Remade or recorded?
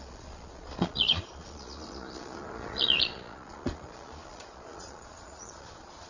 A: remade